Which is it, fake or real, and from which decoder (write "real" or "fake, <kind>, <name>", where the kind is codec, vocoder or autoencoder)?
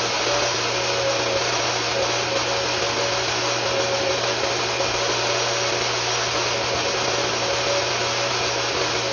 real